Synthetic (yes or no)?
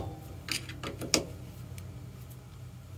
no